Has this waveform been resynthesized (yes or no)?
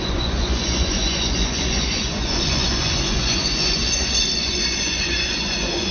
yes